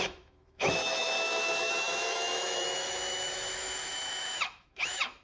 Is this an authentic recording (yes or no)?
no